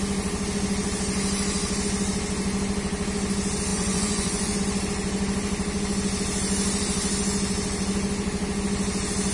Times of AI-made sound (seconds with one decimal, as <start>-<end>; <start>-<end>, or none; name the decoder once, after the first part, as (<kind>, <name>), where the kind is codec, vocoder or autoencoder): 3.7-4.6 (vocoder, Vocos)

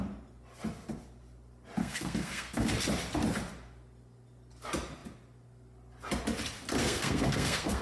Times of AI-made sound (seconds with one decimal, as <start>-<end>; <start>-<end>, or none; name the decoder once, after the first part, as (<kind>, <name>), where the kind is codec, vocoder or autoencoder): 1.8-2.7 (codec, SNAC); 6.8-7.8